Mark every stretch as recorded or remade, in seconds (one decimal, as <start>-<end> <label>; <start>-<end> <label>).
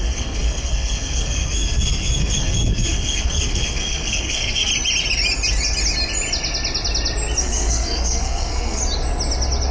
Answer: 0.0-4.7 remade; 4.7-7.4 recorded; 7.4-8.8 remade; 8.8-9.7 recorded